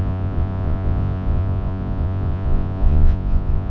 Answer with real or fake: fake